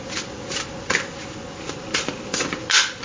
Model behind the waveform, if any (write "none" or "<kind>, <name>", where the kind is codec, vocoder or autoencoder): none